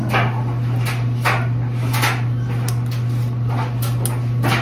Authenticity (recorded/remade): recorded